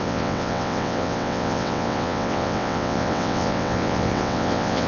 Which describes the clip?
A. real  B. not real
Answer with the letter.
B